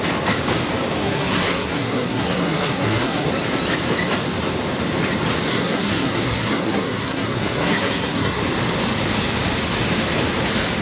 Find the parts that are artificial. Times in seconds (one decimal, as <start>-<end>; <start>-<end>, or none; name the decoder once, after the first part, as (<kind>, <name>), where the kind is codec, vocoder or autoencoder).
1.0-3.3 (codec, SNAC); 5.5-8.4